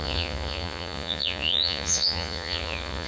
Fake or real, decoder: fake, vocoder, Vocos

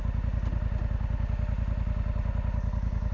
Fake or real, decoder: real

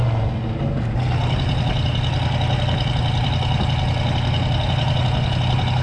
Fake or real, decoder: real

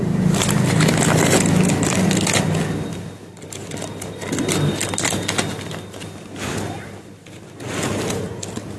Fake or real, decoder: real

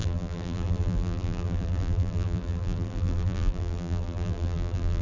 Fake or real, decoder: fake, vocoder, BigVGAN v2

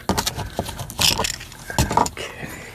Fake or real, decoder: real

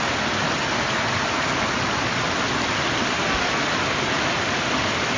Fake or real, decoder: real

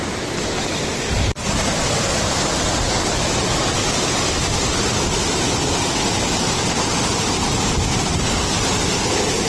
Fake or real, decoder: real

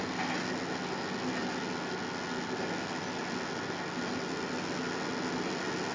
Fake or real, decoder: real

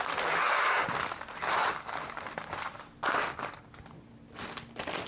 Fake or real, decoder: real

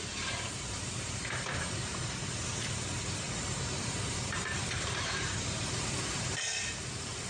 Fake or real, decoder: fake, vocoder, BigVGAN v2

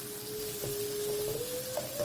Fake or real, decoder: real